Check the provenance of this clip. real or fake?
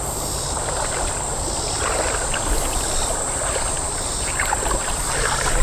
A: real